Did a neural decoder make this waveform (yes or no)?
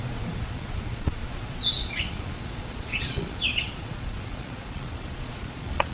yes